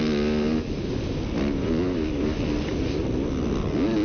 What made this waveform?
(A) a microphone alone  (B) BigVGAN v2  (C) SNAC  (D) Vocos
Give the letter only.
A